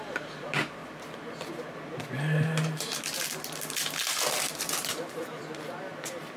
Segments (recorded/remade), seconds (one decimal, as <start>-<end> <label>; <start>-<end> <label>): 0.0-0.8 remade; 0.8-4.5 recorded; 4.5-5.4 remade; 5.4-6.0 recorded; 6.0-6.4 remade